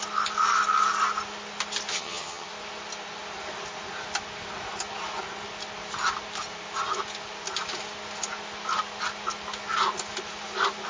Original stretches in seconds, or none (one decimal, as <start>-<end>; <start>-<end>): 0.0-1.9; 2.5-10.9